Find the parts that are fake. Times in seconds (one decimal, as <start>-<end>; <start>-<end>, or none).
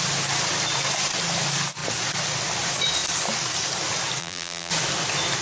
4.2-4.7